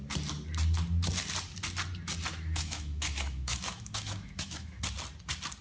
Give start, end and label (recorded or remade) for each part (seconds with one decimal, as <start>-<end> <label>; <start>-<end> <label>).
0.0-2.3 recorded; 2.3-4.8 remade; 4.8-5.6 recorded